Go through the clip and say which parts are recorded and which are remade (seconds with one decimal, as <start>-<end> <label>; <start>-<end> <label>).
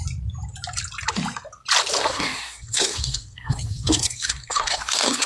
0.0-2.0 recorded; 2.0-5.3 remade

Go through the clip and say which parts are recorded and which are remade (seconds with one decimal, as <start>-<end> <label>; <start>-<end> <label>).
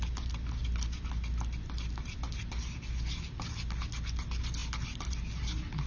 0.0-5.9 recorded